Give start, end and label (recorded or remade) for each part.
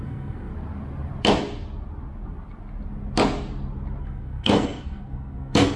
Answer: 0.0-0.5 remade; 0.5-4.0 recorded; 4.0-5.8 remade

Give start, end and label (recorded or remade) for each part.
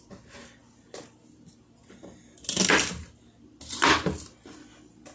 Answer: 0.0-5.1 recorded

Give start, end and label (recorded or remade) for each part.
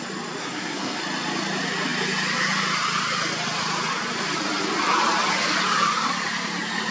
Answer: 0.0-0.4 recorded; 0.4-1.0 remade; 1.0-6.9 recorded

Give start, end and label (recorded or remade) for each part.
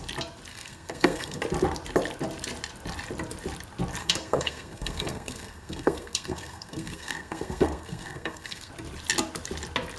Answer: 0.0-0.5 recorded; 0.5-1.4 remade; 1.4-4.0 recorded; 4.0-8.7 remade; 8.7-10.0 recorded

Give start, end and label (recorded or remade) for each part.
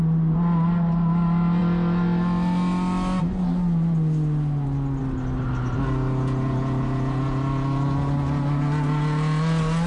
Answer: 0.0-9.9 recorded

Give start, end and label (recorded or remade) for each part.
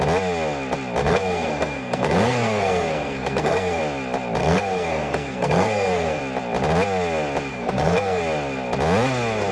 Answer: 0.0-1.0 recorded; 1.0-3.8 remade; 3.8-4.4 recorded; 4.4-6.2 remade; 6.2-7.5 recorded; 7.5-8.2 remade; 8.2-9.5 recorded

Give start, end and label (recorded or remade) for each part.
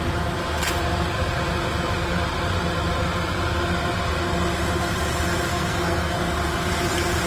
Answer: 0.0-5.5 recorded; 5.5-6.2 remade; 6.2-7.3 recorded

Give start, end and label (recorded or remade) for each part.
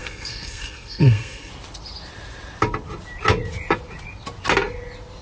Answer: 0.0-1.5 remade; 1.5-5.2 recorded